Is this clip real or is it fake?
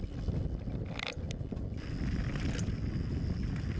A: real